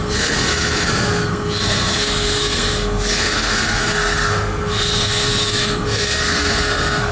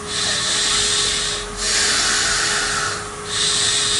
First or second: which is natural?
second